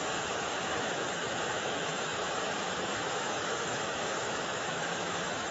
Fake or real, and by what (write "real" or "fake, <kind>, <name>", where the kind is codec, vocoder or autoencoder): fake, autoencoder, DAC-VAE